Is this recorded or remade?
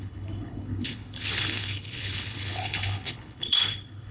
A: remade